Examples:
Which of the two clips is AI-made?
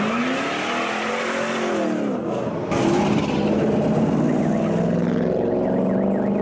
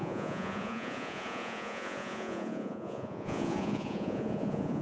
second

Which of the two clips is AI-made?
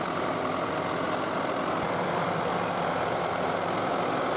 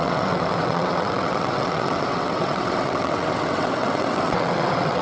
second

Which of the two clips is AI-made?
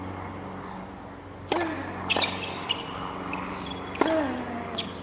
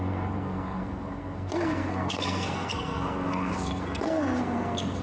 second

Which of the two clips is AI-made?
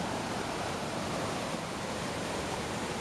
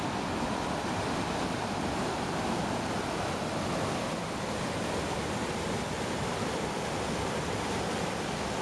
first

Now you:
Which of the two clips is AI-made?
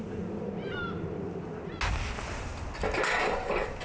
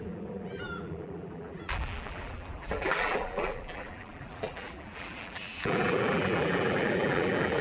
second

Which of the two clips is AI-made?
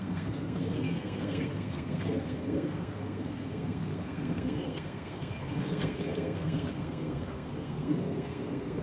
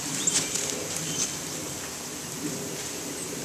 first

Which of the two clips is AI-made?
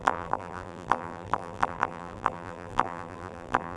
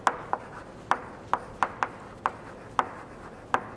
first